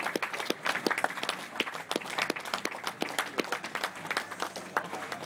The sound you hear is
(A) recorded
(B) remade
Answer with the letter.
A